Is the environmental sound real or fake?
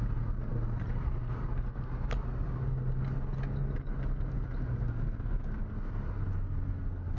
real